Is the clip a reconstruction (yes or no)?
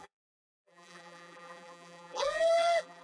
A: yes